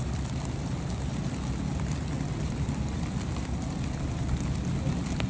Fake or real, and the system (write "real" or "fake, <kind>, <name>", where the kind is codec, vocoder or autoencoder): fake, vocoder, BigVGAN v2